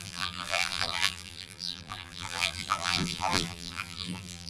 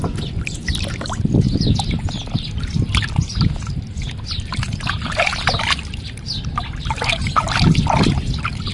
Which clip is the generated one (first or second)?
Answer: first